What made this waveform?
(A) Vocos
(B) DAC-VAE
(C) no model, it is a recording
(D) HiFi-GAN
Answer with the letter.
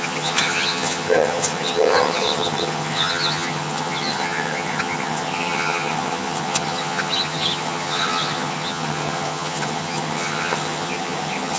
D